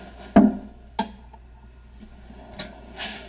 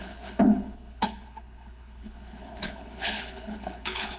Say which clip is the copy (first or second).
second